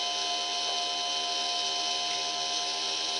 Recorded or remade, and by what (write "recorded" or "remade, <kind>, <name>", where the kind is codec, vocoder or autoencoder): recorded